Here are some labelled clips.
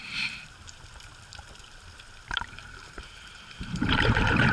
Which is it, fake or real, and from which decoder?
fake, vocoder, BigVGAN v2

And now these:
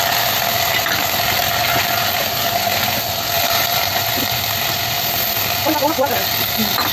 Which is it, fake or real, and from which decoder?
real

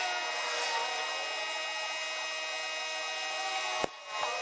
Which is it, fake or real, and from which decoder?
real